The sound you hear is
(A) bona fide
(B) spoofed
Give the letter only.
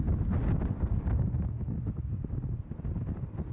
A